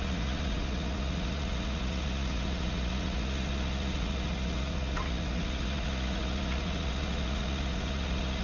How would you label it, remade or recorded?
remade